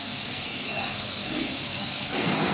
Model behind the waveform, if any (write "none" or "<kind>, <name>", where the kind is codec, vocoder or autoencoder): codec, SNAC